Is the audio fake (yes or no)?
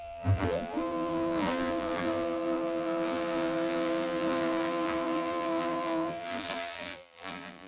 yes